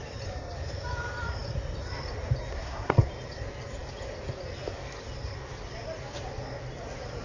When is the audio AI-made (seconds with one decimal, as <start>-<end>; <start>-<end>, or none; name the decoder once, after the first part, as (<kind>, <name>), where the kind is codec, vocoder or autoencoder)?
2.5-3.1 (codec, SNAC)